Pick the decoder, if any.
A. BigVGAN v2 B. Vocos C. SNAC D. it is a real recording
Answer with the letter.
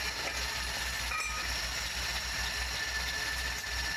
D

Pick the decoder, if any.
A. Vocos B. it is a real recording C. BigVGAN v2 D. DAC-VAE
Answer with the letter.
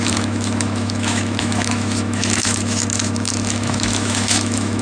D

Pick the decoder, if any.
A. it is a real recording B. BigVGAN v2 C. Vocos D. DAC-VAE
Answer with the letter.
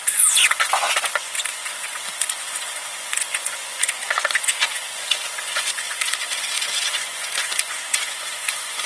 C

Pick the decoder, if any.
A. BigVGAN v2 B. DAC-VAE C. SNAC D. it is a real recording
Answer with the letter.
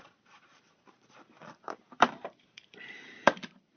A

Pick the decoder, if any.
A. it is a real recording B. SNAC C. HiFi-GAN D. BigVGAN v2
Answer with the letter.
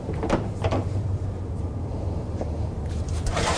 D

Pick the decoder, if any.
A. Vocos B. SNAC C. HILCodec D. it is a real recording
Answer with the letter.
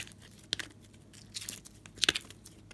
D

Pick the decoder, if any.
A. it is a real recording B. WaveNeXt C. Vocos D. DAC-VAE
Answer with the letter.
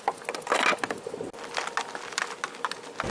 A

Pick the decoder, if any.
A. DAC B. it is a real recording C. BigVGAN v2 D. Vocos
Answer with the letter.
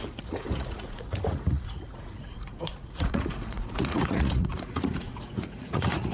D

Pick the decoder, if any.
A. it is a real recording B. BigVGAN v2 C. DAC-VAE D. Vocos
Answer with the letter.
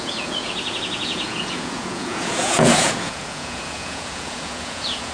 D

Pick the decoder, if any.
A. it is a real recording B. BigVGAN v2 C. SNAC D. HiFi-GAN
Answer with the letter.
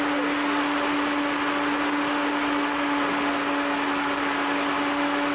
A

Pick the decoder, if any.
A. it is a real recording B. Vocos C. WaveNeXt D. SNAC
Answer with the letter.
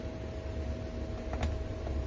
A